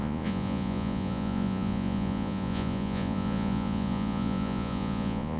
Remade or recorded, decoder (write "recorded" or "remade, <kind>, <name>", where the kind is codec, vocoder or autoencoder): remade, vocoder, Vocos